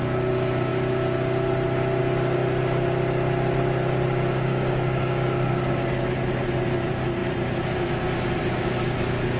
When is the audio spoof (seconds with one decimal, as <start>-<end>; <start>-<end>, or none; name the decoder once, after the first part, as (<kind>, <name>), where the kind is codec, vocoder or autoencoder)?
4.5-5.5 (codec, DAC)